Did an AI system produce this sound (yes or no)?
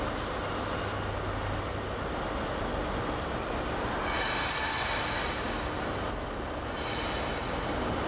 no